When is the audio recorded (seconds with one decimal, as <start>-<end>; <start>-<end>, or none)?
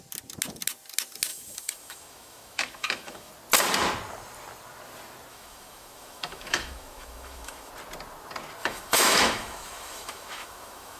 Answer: 0.0-1.3; 3.3-5.3; 7.7-8.6